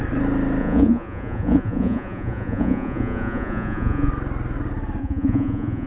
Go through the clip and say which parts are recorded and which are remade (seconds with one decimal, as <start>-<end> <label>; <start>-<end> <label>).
0.0-0.6 recorded; 0.6-4.1 remade; 4.1-5.0 recorded; 5.0-5.9 remade